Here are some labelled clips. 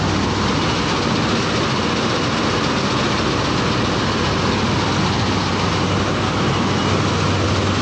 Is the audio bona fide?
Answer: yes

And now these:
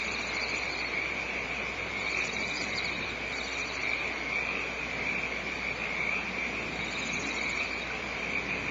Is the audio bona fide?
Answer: yes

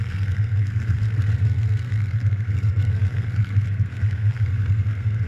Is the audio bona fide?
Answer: no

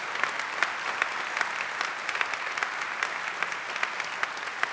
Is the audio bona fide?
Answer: yes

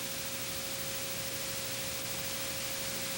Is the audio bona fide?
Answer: yes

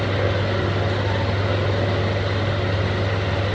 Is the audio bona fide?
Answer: yes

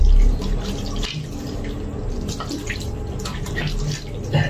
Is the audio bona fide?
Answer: yes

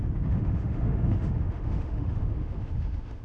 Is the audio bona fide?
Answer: no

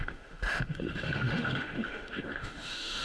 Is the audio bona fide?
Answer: no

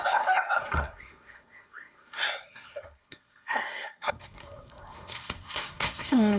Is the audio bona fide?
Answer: no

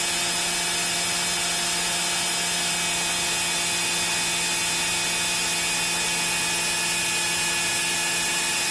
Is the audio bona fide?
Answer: yes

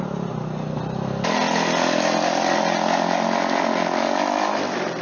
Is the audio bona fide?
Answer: yes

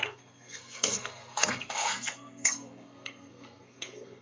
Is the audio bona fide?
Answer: no